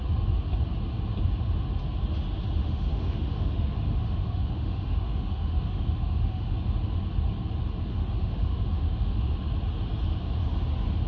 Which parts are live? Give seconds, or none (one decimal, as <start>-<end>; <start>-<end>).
0.0-2.6; 6.5-7.9; 9.3-11.1